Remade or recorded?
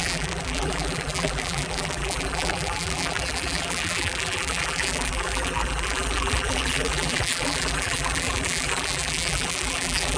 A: remade